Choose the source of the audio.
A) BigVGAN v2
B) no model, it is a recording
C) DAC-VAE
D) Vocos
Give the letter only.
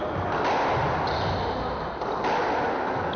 B